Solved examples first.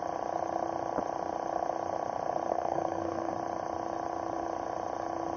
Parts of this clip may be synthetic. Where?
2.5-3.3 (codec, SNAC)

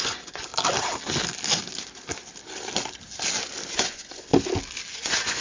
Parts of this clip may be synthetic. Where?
0.0-0.5 (vocoder, Vocos); 3.7-4.3; 4.9-5.4

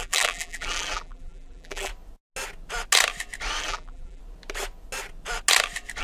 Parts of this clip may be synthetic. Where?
0.0-1.9 (vocoder, BigVGAN v2); 3.6-4.2

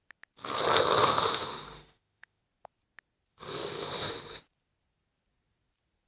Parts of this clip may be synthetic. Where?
1.0-2.4 (autoencoder, DAC-VAE); 3.3-4.4